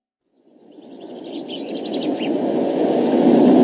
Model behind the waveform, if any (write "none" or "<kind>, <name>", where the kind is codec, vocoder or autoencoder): vocoder, Vocos